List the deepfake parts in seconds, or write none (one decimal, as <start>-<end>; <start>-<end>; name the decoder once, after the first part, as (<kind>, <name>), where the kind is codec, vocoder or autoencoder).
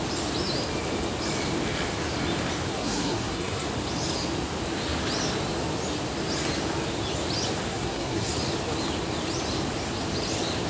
2.7-3.7 (codec, SNAC); 7.7-8.3